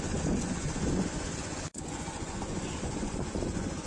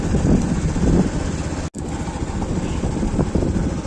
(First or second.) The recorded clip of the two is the second